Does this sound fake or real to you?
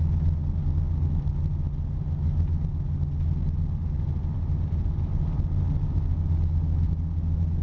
real